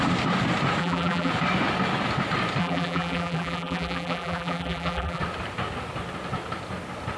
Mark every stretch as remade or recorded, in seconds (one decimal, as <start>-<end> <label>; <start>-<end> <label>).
0.0-0.8 recorded; 0.8-1.3 remade; 1.3-2.6 recorded; 2.6-5.2 remade; 5.2-7.2 recorded